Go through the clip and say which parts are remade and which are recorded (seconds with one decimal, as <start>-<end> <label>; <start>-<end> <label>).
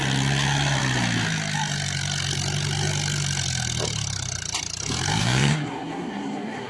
0.0-5.2 recorded; 5.2-6.7 remade